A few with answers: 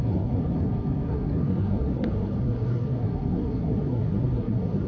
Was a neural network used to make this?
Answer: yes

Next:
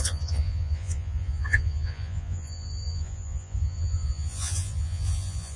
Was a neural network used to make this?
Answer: yes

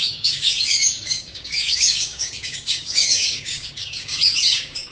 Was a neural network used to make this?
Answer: yes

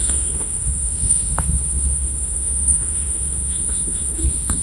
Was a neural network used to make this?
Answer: yes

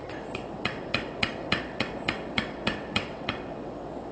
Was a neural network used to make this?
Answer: yes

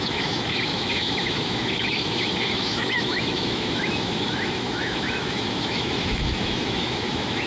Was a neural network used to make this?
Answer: yes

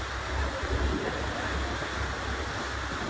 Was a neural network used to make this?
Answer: no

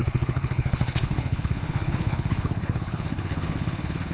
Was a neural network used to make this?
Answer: yes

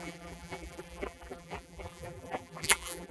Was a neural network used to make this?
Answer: yes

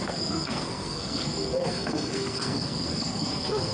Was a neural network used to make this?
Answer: yes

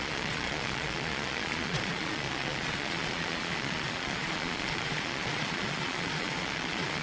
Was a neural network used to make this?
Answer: yes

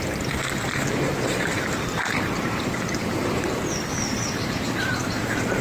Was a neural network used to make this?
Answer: yes